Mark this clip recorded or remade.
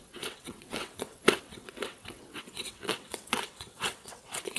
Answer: remade